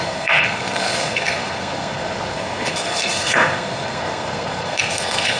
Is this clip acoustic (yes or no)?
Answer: no